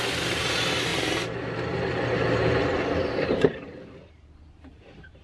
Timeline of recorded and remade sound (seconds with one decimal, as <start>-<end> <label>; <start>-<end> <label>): 0.0-5.2 remade